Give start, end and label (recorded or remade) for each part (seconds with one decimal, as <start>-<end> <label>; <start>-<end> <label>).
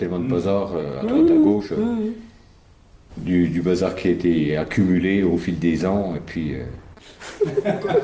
0.0-0.7 recorded; 0.7-1.6 remade; 1.6-8.0 recorded